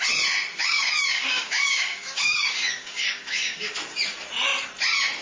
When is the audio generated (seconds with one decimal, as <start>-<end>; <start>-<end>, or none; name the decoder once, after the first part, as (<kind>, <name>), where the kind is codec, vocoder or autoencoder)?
0.6-3.7 (codec, DAC)

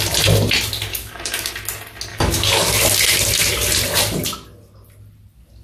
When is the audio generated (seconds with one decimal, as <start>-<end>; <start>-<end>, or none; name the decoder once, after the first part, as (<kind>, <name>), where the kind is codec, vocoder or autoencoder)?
0.9-1.5 (codec, DAC); 2.1-2.8

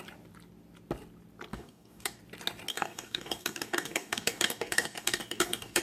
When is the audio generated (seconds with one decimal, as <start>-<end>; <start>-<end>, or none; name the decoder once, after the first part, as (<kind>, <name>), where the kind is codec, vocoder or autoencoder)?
1.5-2.2 (codec, DAC); 2.7-5.8

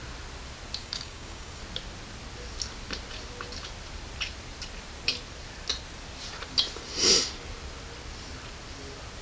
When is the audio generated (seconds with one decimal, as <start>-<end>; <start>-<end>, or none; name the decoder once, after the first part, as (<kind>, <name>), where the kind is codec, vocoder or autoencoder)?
0.8-1.6 (codec, DAC)

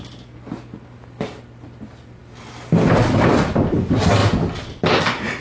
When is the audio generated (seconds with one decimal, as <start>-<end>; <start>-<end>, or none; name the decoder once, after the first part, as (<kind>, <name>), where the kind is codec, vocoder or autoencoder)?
none

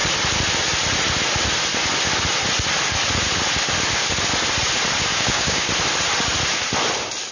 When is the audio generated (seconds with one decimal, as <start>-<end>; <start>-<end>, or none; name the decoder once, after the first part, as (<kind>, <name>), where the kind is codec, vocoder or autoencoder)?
5.1-5.7 (codec, DAC)